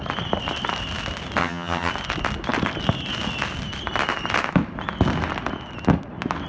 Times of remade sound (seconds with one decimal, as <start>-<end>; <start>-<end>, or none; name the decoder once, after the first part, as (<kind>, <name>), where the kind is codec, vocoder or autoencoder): 1.4-1.9 (vocoder, HiFi-GAN)